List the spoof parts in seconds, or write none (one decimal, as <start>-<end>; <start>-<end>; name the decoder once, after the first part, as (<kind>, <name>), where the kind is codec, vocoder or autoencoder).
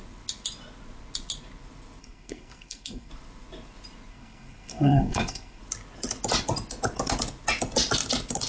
2.0-3.1 (codec, SNAC); 4.1-5.6